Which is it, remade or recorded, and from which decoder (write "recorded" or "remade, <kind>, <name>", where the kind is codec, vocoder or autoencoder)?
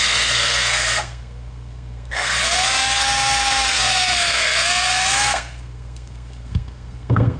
remade, codec, SNAC